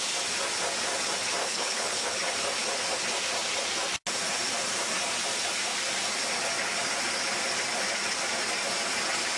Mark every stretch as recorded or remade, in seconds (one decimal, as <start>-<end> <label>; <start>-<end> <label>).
0.0-1.4 recorded; 1.4-2.2 remade; 2.2-9.4 recorded